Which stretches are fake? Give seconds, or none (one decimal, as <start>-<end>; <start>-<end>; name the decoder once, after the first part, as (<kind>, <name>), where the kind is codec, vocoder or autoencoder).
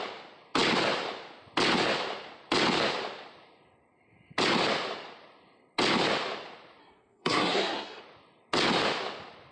6.8-8.0 (codec, SNAC)